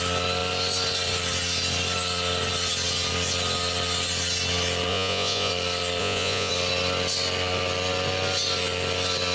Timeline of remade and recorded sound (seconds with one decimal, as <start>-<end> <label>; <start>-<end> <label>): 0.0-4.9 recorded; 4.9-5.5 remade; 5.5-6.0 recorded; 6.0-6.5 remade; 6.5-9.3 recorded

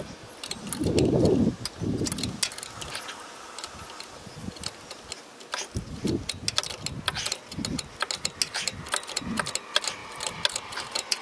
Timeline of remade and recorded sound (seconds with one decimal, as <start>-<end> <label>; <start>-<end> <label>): 0.0-11.2 recorded

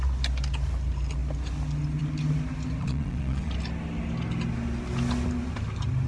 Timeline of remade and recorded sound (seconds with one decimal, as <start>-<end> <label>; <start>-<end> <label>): 0.0-2.8 recorded; 2.8-3.5 remade; 3.5-6.1 recorded

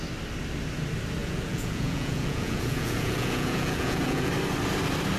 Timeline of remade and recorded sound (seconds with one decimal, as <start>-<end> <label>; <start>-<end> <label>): 0.0-1.2 recorded; 1.2-4.3 remade; 4.3-5.2 recorded

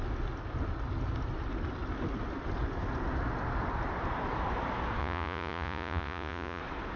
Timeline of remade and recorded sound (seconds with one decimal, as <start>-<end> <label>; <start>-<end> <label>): 0.0-5.0 recorded; 5.0-6.6 remade; 6.6-7.0 recorded

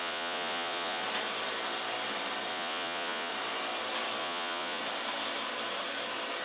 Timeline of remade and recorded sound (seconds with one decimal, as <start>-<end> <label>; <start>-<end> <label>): 0.0-1.0 remade; 1.0-2.5 recorded; 2.5-3.3 remade; 3.3-4.2 recorded; 4.2-4.8 remade; 4.8-6.4 recorded

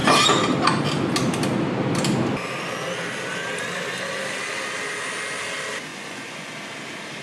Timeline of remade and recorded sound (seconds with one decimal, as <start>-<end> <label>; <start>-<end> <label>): 0.0-5.9 recorded; 5.9-6.5 remade; 6.5-7.2 recorded

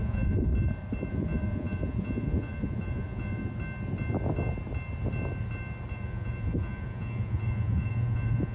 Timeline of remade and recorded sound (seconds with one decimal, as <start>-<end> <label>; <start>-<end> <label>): 0.0-0.5 remade; 0.5-1.1 recorded; 1.1-3.4 remade; 3.4-5.9 recorded; 5.9-8.5 remade